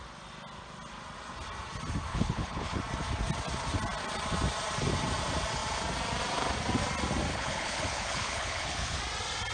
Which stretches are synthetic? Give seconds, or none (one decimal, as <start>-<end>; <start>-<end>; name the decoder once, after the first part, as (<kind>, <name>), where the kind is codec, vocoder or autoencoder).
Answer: 2.1-2.8 (codec, HILCodec); 7.3-9.0